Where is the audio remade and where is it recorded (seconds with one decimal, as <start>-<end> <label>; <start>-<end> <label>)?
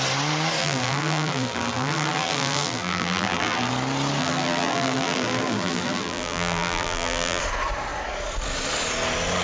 0.0-0.6 recorded; 0.6-3.7 remade; 3.7-4.2 recorded; 4.2-7.4 remade; 7.4-9.4 recorded